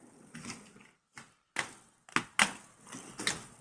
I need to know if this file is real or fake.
real